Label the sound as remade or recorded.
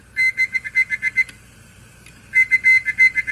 recorded